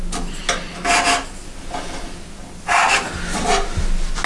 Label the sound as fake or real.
real